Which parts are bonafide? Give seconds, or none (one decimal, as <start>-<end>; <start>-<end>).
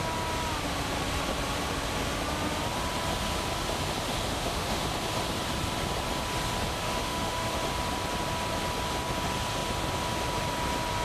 0.0-4.3; 4.8-6.8; 7.6-11.0